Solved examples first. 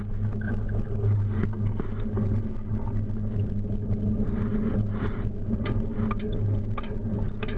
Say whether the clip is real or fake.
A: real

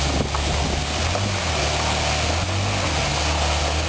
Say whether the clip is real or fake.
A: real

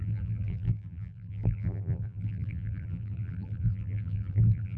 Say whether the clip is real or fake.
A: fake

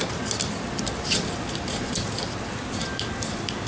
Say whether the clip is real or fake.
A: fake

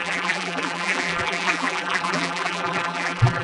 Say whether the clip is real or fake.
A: fake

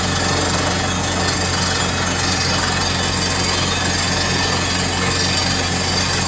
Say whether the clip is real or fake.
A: real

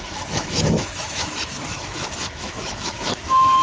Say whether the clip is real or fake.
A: fake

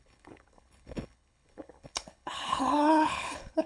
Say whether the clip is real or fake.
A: fake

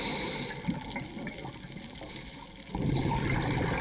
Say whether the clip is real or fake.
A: real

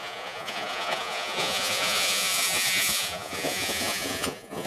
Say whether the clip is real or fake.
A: fake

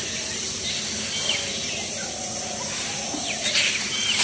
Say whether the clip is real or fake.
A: real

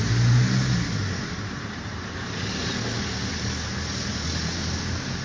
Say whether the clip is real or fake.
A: real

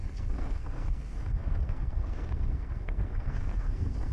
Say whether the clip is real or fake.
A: fake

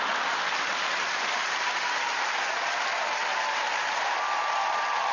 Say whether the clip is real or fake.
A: real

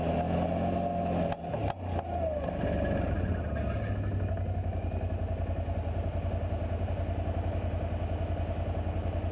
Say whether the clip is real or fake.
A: real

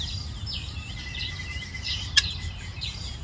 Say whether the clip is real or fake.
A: fake